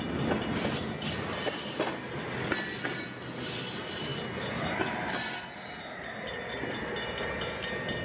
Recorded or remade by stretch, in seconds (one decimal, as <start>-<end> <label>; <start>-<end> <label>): 0.0-8.0 recorded

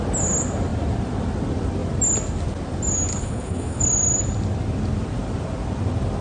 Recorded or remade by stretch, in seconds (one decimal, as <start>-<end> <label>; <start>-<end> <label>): 0.0-3.1 recorded; 3.1-3.8 remade; 3.8-6.2 recorded